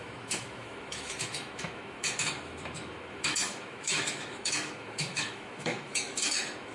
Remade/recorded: remade